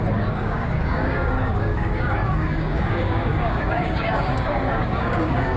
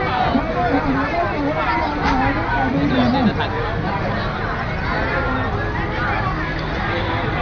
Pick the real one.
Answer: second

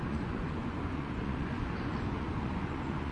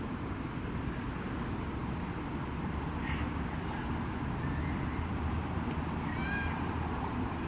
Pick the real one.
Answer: second